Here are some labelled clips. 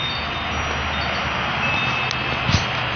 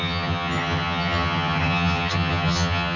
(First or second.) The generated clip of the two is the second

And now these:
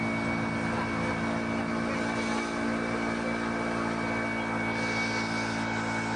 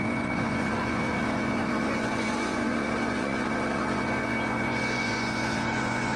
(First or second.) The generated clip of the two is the second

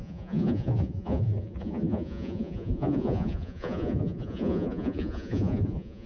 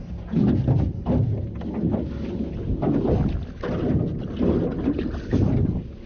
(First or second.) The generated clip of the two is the first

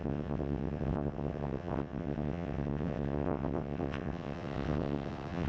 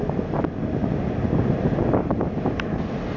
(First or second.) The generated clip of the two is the first